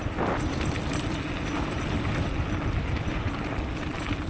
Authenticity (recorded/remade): recorded